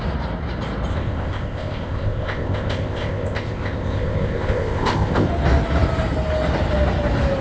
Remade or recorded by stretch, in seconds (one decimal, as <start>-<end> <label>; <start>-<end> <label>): 0.0-0.9 recorded; 0.9-5.3 remade; 5.3-7.4 recorded